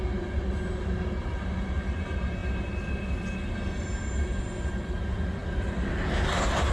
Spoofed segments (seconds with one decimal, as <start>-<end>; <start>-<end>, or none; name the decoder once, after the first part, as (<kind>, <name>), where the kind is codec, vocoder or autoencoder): none